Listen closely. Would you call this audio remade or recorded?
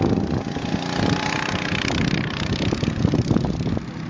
recorded